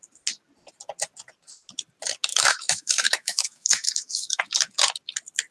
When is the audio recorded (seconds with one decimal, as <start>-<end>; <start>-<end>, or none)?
0.0-2.3; 4.4-5.5